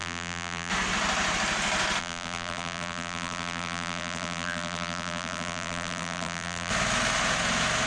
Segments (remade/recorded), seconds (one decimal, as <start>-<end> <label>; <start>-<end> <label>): 0.0-0.7 remade; 0.7-2.0 recorded; 2.0-6.7 remade; 6.7-7.9 recorded